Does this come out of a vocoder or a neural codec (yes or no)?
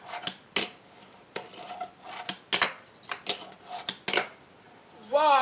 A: no